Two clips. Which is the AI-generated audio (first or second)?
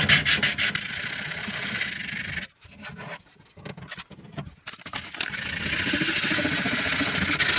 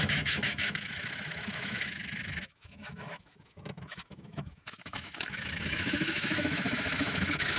second